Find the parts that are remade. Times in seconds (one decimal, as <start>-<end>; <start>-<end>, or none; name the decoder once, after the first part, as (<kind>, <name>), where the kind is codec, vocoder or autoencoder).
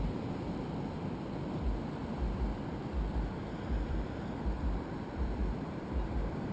0.0-2.0 (vocoder, BigVGAN v2); 3.9-6.5